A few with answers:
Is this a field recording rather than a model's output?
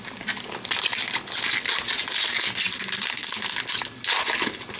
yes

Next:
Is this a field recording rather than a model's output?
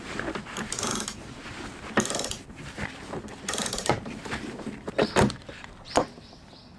no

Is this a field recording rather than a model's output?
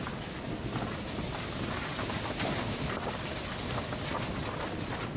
yes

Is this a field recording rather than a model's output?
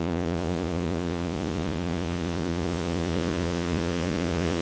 no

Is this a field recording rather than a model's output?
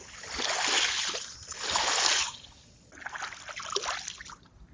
yes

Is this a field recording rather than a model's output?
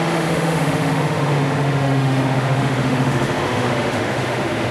no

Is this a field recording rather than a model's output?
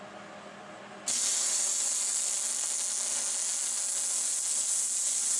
yes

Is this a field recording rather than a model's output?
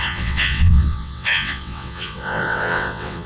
no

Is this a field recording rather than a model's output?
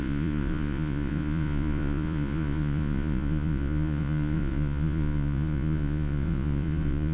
no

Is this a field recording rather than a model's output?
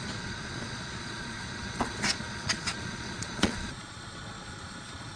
no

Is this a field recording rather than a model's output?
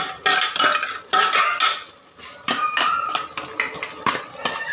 yes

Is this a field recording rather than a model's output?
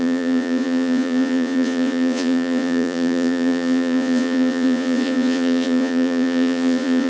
no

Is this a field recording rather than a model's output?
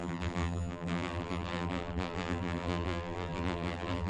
no